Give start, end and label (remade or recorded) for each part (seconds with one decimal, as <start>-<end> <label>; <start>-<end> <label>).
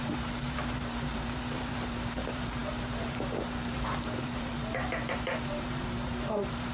0.0-6.7 remade